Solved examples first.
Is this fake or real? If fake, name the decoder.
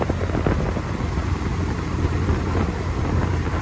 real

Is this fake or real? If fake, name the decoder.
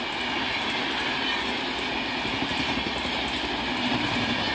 real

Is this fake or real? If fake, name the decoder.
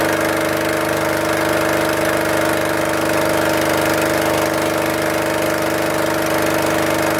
real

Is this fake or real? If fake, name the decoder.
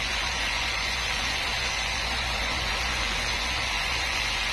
fake, vocoder, Vocos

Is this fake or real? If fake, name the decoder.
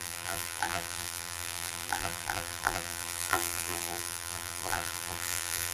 fake, vocoder, BigVGAN v2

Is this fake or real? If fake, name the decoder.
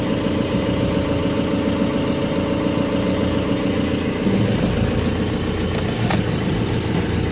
real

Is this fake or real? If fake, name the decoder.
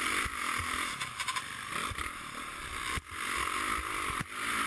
fake, vocoder, BigVGAN v2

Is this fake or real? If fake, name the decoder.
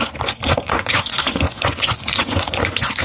fake, vocoder, Vocos